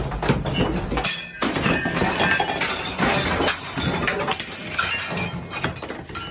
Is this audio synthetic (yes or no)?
no